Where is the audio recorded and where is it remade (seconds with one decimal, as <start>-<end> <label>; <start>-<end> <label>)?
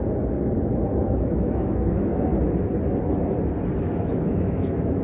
0.0-1.0 recorded; 1.0-2.3 remade; 2.3-3.8 recorded; 3.8-5.0 remade